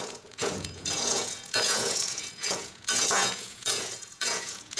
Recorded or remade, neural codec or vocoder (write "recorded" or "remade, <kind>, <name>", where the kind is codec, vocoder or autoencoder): remade, vocoder, Vocos